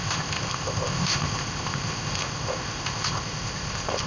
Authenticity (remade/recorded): remade